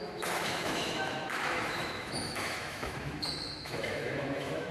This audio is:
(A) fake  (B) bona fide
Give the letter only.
A